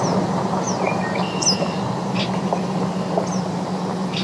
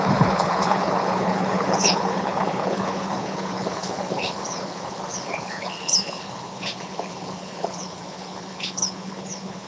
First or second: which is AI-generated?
second